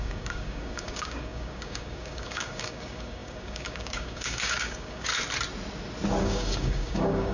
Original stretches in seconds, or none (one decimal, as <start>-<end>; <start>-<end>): 5.1-6.2